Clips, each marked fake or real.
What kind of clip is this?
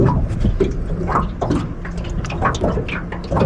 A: real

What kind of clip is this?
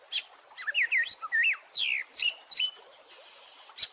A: real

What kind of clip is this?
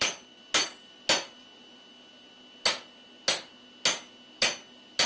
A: real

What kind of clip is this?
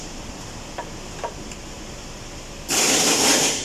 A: fake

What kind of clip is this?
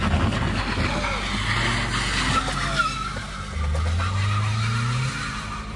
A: real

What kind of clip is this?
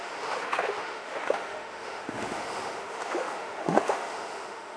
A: fake